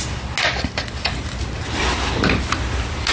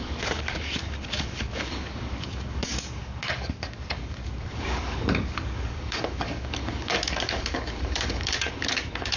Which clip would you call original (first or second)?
first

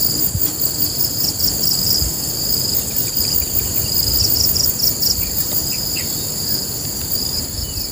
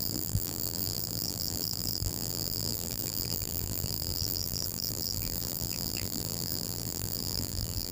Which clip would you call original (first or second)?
first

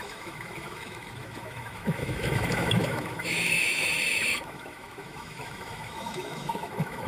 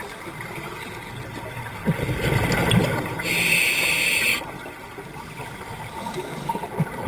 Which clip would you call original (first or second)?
second